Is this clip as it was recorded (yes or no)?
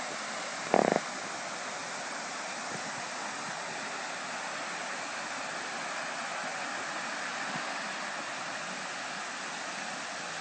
yes